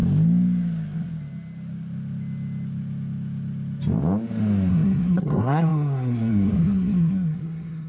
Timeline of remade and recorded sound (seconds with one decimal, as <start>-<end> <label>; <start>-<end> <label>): 0.0-4.7 recorded; 4.7-7.9 remade